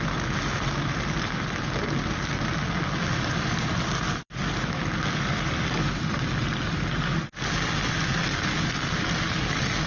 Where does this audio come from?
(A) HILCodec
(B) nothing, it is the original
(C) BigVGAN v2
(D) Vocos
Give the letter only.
B